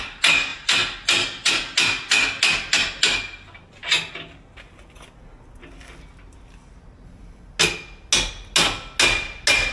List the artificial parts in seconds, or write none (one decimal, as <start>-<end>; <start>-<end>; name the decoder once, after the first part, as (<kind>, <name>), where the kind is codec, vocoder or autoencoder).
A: none